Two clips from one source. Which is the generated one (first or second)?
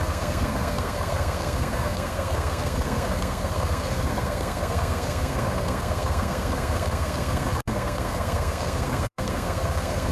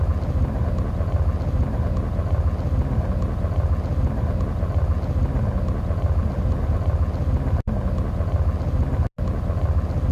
first